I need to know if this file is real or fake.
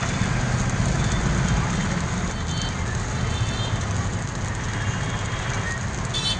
real